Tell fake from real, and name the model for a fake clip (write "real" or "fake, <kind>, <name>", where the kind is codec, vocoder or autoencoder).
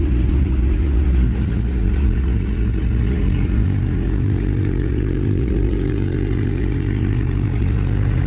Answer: fake, vocoder, Vocos